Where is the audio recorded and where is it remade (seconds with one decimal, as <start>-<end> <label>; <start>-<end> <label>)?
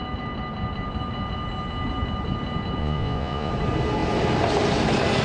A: 0.0-2.8 recorded; 2.8-3.5 remade; 3.5-5.2 recorded